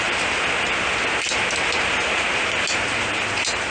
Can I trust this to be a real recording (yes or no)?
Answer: yes